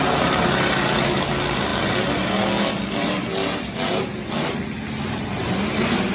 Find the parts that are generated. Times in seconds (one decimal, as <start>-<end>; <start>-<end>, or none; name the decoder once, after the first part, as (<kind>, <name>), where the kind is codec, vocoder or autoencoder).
none